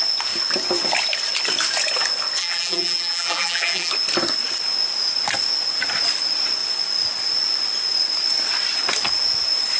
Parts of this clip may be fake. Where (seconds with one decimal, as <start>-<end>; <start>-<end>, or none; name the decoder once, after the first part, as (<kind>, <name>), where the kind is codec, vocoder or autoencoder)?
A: 2.4-3.9 (vocoder, BigVGAN v2)